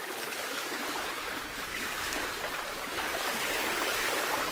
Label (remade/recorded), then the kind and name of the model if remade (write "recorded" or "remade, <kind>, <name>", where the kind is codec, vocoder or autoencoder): remade, codec, DAC